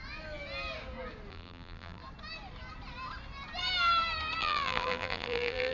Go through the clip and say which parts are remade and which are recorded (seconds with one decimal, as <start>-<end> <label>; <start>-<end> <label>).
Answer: 0.0-1.3 recorded; 1.3-2.0 remade; 2.0-4.4 recorded; 4.4-5.7 remade